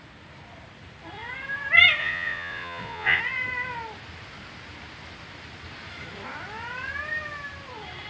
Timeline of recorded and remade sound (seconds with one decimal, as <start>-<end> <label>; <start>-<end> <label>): 0.0-2.0 recorded; 2.0-3.2 remade; 3.2-8.1 recorded